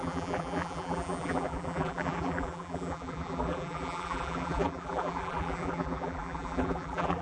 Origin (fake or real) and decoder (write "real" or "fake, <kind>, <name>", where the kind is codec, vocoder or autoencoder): fake, vocoder, BigVGAN v2